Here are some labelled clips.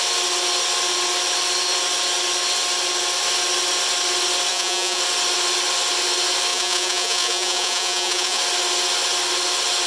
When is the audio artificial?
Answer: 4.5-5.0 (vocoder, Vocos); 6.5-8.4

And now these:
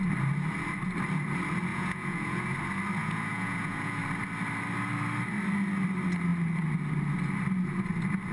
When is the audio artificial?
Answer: 1.7-2.5 (vocoder, Vocos); 3.0-4.0

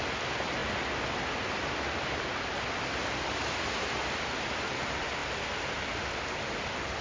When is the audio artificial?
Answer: none

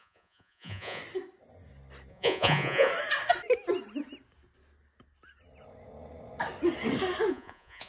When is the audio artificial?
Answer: 0.0-1.0 (vocoder, Vocos); 2.1-2.9; 7.3-7.9

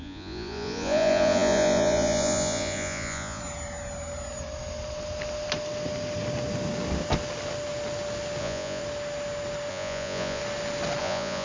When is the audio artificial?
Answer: 0.0-3.4 (vocoder, Vocos); 8.4-8.8; 9.7-10.4; 11.0-11.4

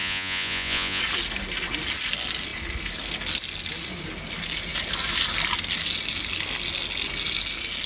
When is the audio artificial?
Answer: 0.0-1.0 (vocoder, Vocos)

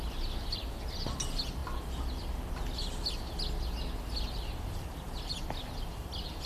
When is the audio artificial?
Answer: none

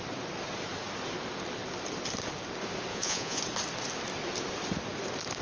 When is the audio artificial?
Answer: 2.9-3.4 (vocoder, Vocos)